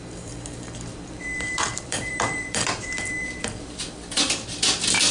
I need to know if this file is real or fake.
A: fake